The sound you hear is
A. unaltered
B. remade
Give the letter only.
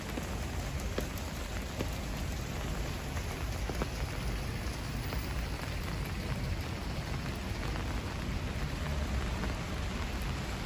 A